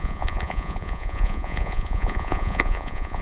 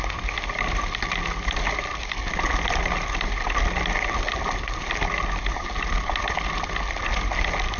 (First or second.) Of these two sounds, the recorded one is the second